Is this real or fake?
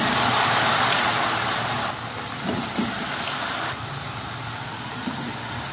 real